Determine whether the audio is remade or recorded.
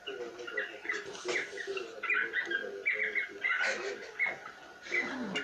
recorded